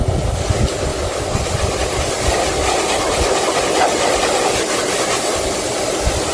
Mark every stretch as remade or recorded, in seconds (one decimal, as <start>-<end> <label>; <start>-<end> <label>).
0.0-0.9 recorded; 0.9-2.0 remade; 2.0-2.6 recorded; 2.6-3.4 remade; 3.4-6.3 recorded